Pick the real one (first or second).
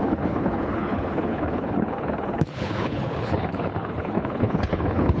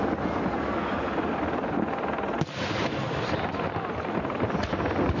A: second